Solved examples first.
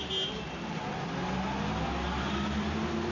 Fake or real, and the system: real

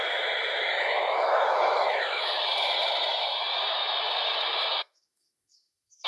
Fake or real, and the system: fake, autoencoder, DAC-VAE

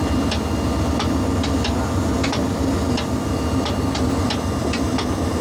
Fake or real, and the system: real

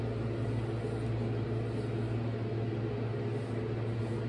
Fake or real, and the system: real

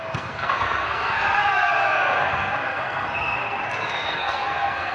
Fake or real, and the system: fake, codec, SNAC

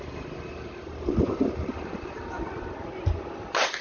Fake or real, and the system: real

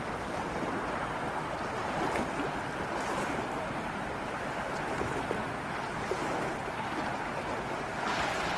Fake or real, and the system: real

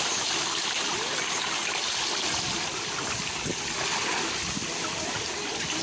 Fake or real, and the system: real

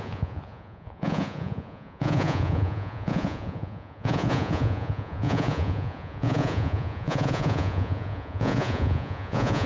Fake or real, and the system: fake, vocoder, Vocos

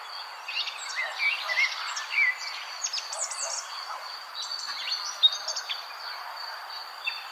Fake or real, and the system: real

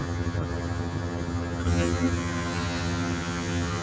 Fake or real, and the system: fake, vocoder, HiFi-GAN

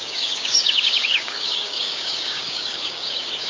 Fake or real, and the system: fake, codec, DAC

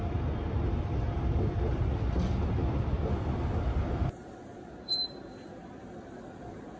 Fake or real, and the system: fake, vocoder, BigVGAN v2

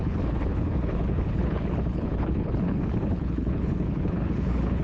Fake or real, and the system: fake, codec, HILCodec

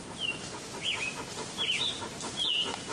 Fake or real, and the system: real